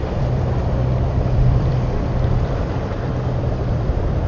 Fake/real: fake